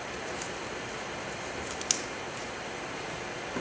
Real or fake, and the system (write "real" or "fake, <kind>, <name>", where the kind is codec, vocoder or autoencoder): real